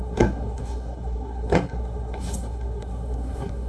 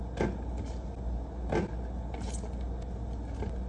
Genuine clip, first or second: second